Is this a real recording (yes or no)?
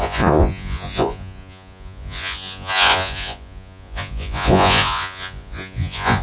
no